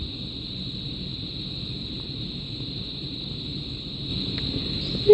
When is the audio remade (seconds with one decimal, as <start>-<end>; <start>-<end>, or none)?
none